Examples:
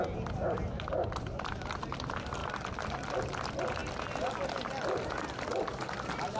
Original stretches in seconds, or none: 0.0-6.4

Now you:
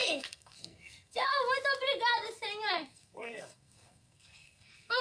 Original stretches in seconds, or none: 1.3-2.7

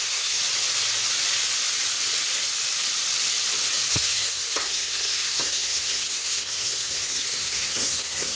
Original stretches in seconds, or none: 0.4-3.9